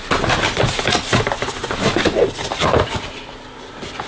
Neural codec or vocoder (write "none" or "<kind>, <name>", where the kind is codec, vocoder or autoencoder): none